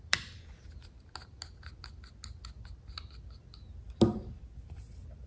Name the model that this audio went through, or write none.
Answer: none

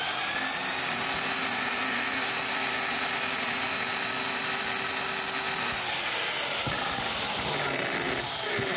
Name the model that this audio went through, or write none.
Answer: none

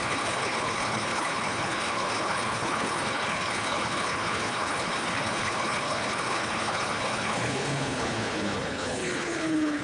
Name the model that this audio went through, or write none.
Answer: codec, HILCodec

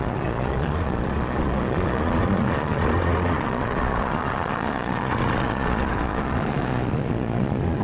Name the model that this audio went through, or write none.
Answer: vocoder, Vocos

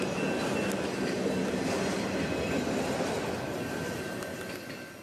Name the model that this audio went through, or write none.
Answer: none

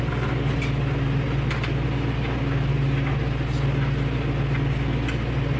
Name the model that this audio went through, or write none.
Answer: none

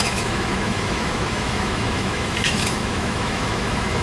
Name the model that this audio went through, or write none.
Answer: autoencoder, DAC-VAE